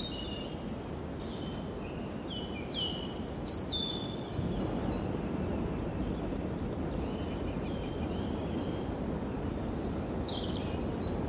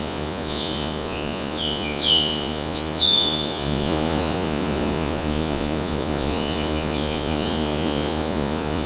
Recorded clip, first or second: first